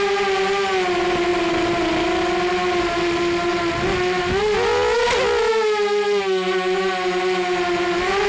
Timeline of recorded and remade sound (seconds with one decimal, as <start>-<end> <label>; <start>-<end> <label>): 0.0-8.3 recorded